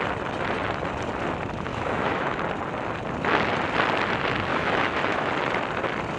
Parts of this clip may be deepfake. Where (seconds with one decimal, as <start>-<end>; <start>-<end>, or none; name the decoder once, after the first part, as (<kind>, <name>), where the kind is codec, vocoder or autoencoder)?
1.7-2.4 (autoencoder, DAC-VAE); 4.5-5.3